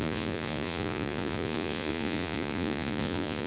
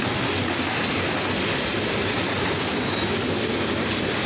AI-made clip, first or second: first